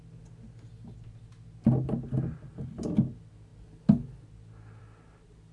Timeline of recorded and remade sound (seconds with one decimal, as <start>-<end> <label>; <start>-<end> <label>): 0.0-5.5 recorded